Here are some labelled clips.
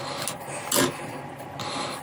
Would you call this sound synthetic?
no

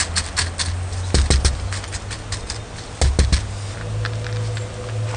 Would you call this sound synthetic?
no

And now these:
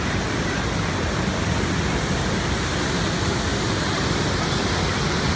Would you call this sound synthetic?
no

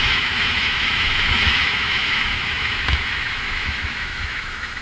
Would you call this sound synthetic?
yes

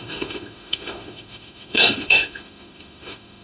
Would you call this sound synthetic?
yes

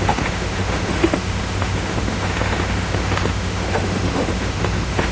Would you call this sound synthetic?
yes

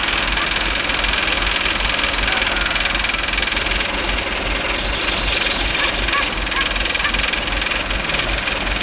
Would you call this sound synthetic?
no